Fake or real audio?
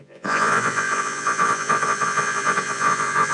fake